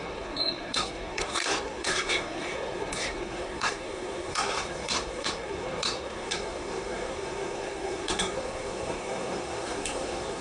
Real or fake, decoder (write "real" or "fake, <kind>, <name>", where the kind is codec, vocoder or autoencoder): fake, codec, SNAC